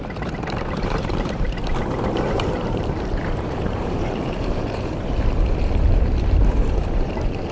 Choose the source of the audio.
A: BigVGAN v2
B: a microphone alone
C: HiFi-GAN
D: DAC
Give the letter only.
A